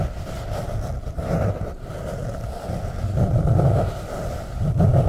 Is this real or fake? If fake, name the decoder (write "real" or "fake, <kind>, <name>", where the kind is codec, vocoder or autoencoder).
real